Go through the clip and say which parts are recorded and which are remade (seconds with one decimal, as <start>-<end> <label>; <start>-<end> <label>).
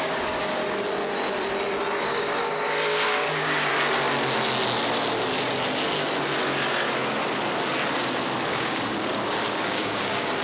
0.0-0.6 remade; 0.6-2.0 recorded; 2.0-3.7 remade; 3.7-8.5 recorded; 8.5-10.4 remade